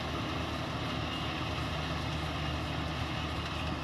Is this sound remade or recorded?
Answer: recorded